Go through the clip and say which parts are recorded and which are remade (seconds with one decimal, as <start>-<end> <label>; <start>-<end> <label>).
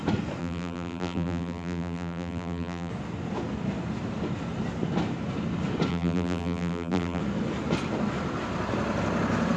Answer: 0.0-0.4 recorded; 0.4-2.9 remade; 2.9-5.9 recorded; 5.9-7.2 remade; 7.2-9.6 recorded